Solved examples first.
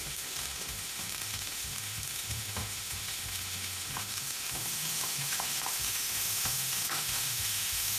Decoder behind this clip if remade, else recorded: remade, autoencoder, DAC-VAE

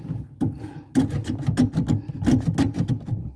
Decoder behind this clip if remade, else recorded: recorded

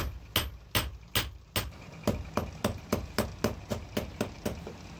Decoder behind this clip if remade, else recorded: recorded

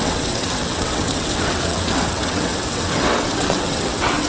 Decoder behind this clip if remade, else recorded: remade, vocoder, WaveNeXt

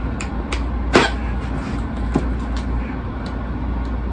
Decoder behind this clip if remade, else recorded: recorded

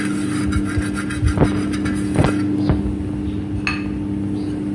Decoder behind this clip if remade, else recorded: recorded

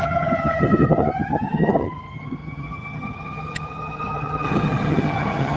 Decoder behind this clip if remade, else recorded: remade, vocoder, HiFi-GAN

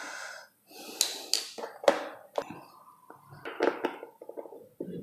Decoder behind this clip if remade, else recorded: recorded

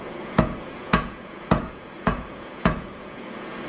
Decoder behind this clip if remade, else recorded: remade, vocoder, Vocos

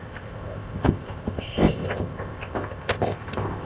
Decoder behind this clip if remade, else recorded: remade, codec, ZipCodec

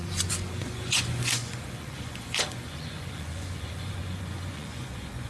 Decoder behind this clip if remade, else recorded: remade, vocoder, Vocos